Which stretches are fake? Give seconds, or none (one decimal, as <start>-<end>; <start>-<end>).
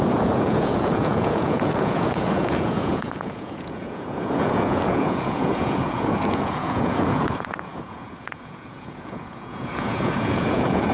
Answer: 0.0-10.9